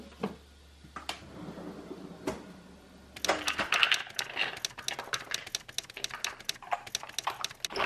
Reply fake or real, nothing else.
real